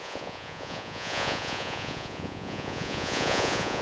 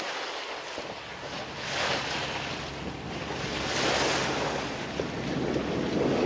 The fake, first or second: first